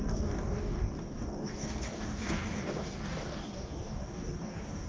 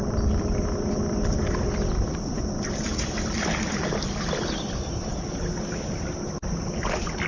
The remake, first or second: first